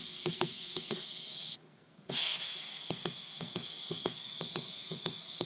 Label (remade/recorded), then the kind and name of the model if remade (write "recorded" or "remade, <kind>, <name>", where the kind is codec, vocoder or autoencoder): remade, codec, SNAC